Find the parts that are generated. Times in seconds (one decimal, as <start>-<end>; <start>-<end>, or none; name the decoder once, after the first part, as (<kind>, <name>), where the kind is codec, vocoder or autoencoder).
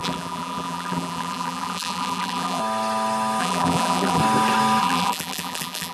0.0-2.6 (vocoder, BigVGAN v2); 3.4-4.2; 4.8-5.9